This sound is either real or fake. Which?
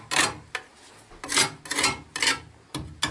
real